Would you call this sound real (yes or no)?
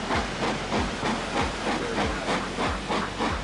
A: yes